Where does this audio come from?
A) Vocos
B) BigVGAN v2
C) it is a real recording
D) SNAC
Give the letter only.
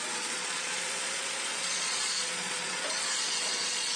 A